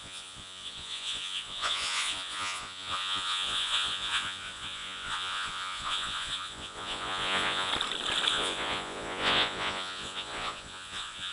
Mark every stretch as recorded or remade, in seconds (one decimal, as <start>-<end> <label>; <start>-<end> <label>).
0.0-7.7 remade; 7.7-8.3 recorded; 8.3-11.3 remade